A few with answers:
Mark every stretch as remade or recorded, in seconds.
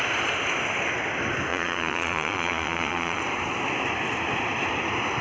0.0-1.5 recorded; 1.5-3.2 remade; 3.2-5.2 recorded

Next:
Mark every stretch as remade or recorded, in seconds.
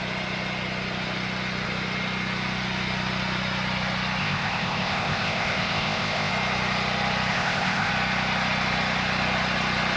0.0-4.2 recorded; 4.2-6.3 remade; 6.3-7.3 recorded; 7.3-7.9 remade; 7.9-10.0 recorded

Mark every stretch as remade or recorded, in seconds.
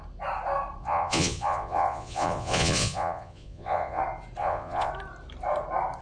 0.0-0.8 recorded; 0.8-4.0 remade; 4.0-4.4 recorded; 4.4-4.9 remade; 4.9-6.0 recorded